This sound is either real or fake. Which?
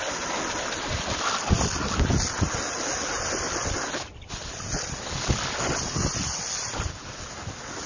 real